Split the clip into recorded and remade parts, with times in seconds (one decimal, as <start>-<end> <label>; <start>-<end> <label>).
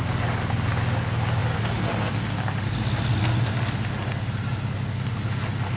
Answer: 0.0-5.8 recorded